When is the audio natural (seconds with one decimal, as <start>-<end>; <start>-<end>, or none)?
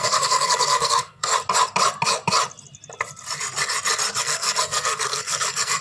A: 1.3-4.2